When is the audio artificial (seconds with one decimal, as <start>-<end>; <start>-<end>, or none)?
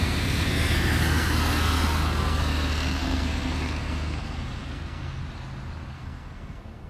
0.0-5.2; 5.9-6.9